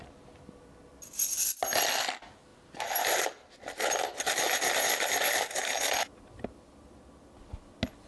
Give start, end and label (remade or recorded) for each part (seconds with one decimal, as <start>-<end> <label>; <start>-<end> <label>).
0.0-8.1 recorded